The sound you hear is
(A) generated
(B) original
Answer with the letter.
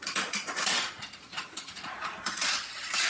A